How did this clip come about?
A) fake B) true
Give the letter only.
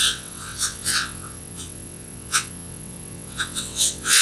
A